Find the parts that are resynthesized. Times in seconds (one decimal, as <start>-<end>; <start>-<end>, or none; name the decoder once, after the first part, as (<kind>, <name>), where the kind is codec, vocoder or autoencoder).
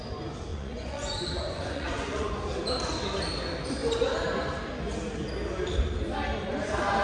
0.5-2.3 (vocoder, Vocos)